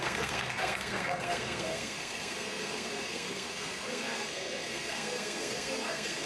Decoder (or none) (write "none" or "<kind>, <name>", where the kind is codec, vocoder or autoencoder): codec, SNAC